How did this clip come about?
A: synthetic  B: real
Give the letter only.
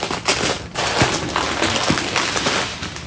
B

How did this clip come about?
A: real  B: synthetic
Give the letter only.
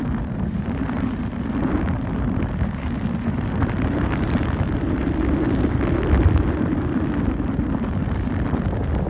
A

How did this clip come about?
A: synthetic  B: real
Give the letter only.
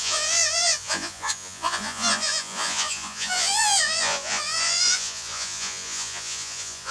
A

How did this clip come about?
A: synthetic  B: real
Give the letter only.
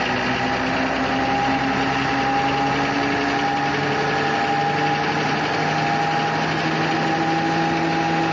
B